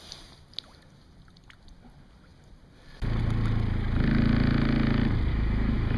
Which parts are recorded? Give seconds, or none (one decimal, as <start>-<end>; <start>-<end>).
0.0-5.3